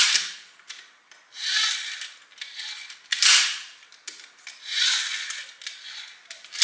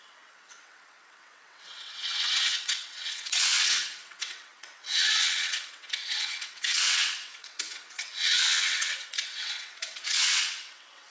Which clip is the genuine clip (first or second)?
first